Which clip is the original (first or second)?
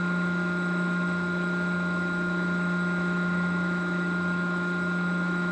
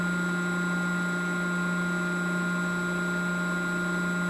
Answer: second